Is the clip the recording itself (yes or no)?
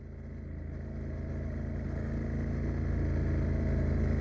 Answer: yes